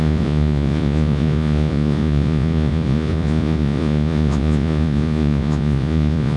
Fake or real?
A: fake